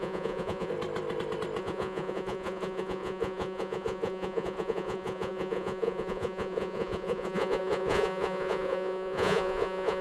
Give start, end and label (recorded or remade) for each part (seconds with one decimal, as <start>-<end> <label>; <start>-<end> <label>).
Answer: 0.0-0.7 remade; 0.7-1.6 recorded; 1.6-10.0 remade